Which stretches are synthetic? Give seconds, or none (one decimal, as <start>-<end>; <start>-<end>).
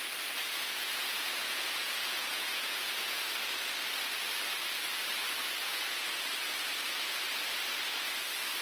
0.4-3.3; 5.6-6.2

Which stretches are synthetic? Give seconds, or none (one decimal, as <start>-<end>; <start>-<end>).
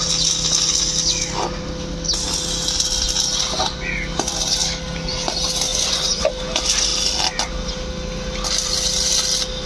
5.7-6.3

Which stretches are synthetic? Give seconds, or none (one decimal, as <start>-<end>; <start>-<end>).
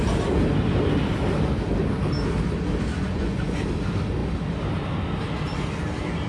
2.9-3.6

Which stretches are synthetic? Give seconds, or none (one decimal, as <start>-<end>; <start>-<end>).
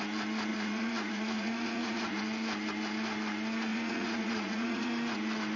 0.5-2.2; 3.7-4.9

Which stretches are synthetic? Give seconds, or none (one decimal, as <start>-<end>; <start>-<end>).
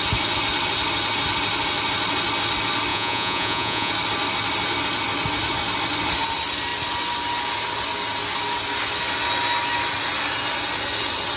2.9-3.9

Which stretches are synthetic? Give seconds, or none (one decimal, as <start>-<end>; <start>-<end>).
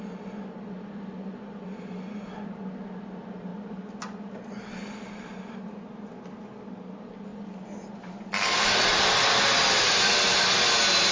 none